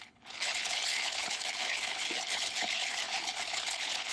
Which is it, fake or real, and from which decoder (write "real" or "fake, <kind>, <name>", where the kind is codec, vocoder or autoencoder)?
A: fake, codec, HILCodec